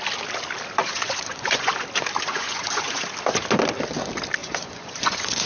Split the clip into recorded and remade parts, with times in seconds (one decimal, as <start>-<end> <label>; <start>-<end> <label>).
0.0-0.8 recorded; 0.8-1.7 remade; 1.7-2.3 recorded; 2.3-3.0 remade; 3.0-4.4 recorded; 4.4-5.5 remade